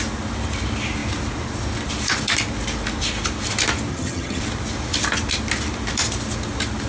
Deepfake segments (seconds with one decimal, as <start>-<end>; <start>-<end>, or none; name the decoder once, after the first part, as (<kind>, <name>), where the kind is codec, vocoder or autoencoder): 3.9-4.4 (vocoder, HiFi-GAN)